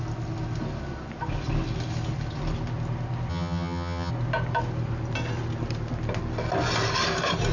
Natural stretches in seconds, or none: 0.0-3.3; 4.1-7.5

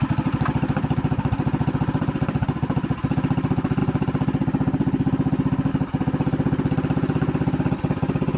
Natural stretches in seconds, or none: 0.0-8.4

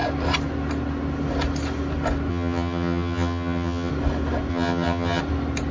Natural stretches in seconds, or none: 0.0-2.3; 3.9-4.5; 5.2-5.7

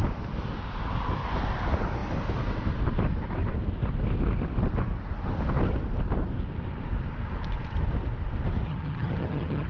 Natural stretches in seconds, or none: 0.0-8.7

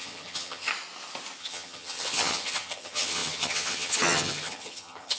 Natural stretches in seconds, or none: 0.7-1.4

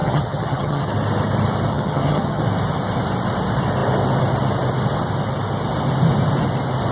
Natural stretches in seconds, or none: 0.9-1.7; 2.4-6.9